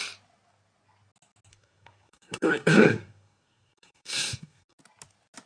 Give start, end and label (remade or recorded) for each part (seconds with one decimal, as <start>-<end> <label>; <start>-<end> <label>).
0.0-1.5 recorded; 1.5-4.8 remade; 4.8-5.5 recorded